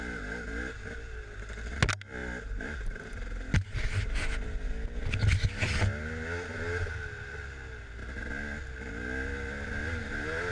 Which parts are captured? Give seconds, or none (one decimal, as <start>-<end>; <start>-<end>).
0.0-10.5